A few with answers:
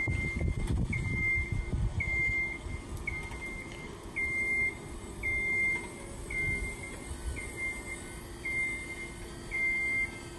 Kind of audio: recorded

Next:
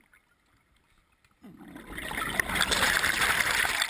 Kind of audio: recorded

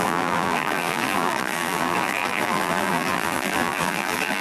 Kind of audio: remade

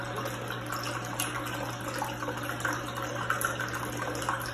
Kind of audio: recorded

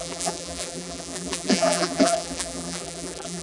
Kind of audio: remade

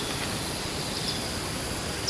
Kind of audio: recorded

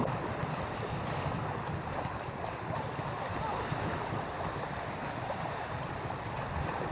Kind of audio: remade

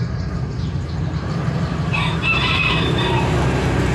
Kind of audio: remade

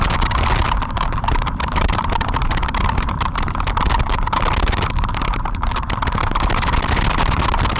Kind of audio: remade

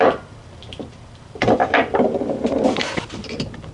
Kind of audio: remade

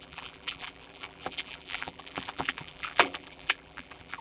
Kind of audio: remade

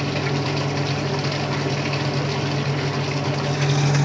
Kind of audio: recorded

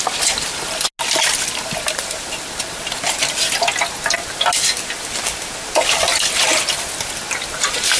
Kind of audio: recorded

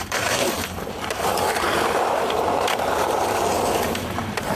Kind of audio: remade